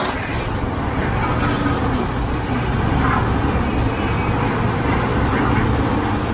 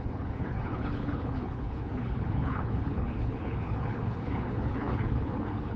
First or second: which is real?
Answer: first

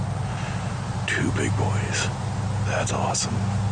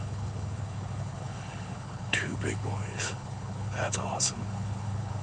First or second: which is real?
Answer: first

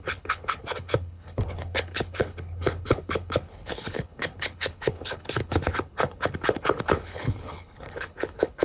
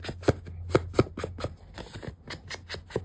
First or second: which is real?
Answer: second